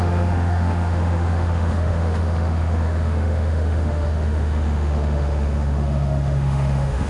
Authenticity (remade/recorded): remade